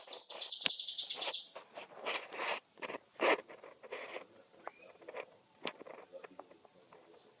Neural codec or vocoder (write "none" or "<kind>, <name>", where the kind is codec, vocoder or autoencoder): vocoder, BigVGAN v2